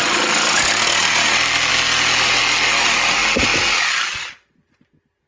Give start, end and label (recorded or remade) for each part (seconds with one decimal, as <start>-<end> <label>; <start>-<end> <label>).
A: 0.0-5.3 recorded